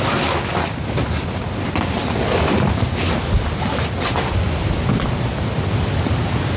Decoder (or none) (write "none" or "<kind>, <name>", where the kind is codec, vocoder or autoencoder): none